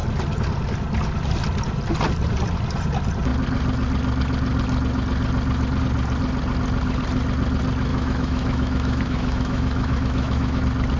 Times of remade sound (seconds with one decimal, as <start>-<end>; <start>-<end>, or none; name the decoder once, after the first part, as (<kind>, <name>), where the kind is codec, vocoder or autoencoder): 7.9-10.6 (autoencoder, DAC-VAE)